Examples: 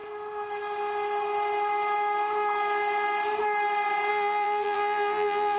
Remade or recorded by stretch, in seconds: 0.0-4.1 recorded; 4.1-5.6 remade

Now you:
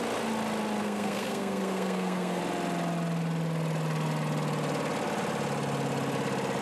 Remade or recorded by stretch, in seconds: 0.0-0.8 recorded; 0.8-2.4 remade; 2.4-6.6 recorded

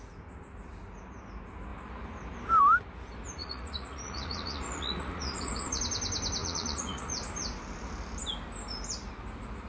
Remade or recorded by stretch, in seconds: 0.0-3.4 recorded; 3.4-5.8 remade; 5.8-6.4 recorded; 6.4-7.1 remade; 7.1-9.7 recorded

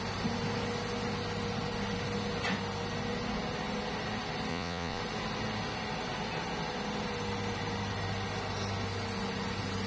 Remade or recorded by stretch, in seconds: 0.0-4.5 recorded; 4.5-5.0 remade; 5.0-9.9 recorded